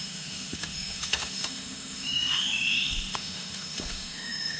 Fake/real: fake